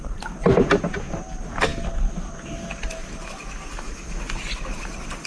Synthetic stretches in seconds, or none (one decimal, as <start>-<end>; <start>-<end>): none